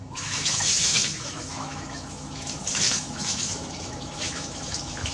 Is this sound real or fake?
fake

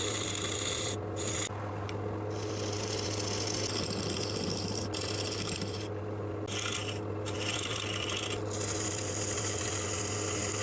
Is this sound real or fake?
real